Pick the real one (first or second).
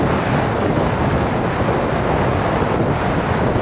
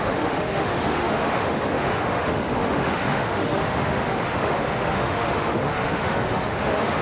first